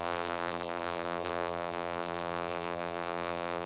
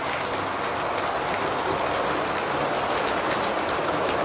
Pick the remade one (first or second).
first